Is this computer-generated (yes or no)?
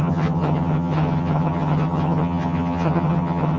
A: yes